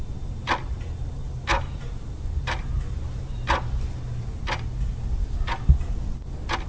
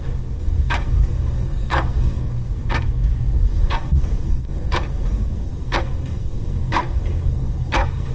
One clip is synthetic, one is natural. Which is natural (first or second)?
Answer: first